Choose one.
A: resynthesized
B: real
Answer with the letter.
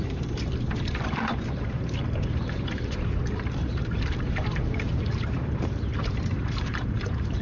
A